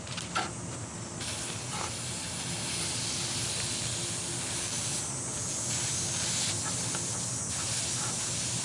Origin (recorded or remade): recorded